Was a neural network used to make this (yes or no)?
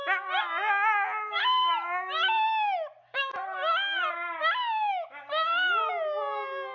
no